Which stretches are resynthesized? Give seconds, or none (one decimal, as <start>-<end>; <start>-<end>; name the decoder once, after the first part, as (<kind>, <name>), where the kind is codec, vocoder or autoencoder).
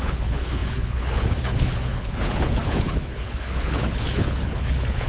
0.0-5.1 (codec, HILCodec)